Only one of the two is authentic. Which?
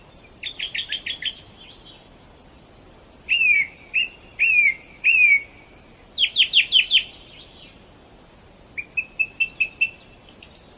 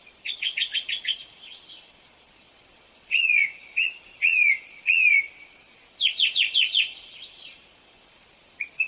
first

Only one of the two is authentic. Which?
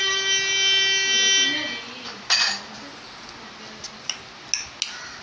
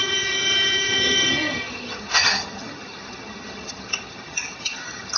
first